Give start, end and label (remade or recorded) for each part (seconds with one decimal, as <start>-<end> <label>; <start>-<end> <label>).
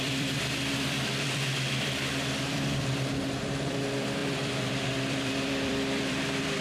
0.0-6.6 remade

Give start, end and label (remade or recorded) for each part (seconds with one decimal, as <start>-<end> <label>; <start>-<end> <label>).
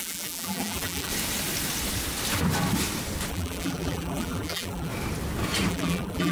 0.0-1.1 remade; 1.1-3.3 recorded; 3.3-4.9 remade; 4.9-5.7 recorded; 5.7-6.3 remade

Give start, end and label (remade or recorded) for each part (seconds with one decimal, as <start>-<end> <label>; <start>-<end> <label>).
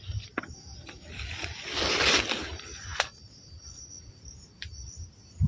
0.0-0.7 recorded; 0.7-1.8 remade; 1.8-2.9 recorded; 2.9-5.1 remade; 5.1-5.5 recorded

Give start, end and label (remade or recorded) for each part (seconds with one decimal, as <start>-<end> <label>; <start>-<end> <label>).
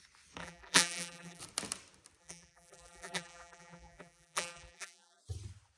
0.0-0.4 recorded; 0.4-1.4 remade; 1.4-2.2 recorded; 2.2-5.2 remade; 5.2-5.8 recorded